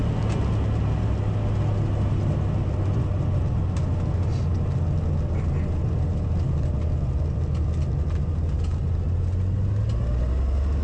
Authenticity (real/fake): real